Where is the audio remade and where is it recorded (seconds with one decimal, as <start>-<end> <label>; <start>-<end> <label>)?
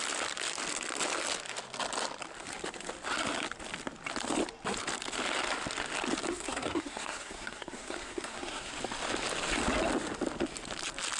0.0-6.3 recorded; 6.3-8.7 remade; 8.7-11.2 recorded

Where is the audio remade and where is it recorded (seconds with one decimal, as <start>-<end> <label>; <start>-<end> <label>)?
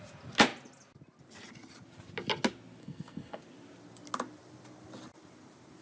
0.0-2.8 recorded; 2.8-3.4 remade; 3.4-5.8 recorded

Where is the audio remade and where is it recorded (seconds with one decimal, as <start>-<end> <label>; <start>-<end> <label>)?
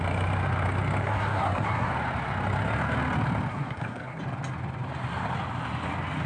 0.0-1.0 recorded; 1.0-1.9 remade; 1.9-3.5 recorded; 3.5-4.2 remade; 4.2-6.3 recorded